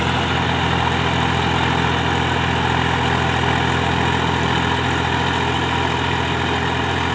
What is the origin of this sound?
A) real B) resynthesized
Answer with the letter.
A